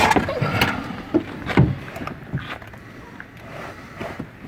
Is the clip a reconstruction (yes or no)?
no